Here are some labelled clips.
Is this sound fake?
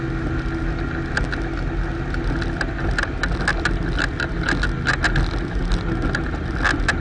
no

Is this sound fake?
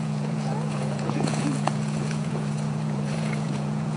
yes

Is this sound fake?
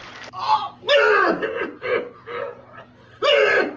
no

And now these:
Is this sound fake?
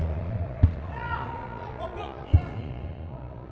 yes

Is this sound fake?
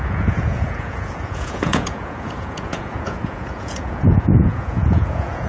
yes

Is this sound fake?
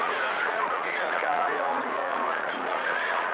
yes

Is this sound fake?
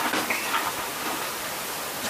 no